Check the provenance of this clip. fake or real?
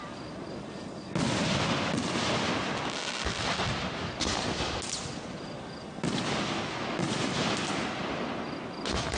real